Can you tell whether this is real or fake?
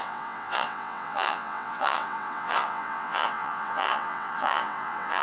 fake